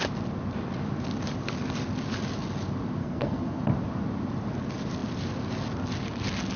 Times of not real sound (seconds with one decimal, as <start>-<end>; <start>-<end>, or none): 3.0-3.6